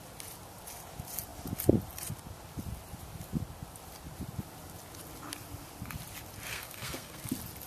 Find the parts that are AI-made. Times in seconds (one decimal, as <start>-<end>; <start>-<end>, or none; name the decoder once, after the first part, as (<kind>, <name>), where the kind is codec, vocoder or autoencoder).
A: 6.5-7.2 (codec, SNAC)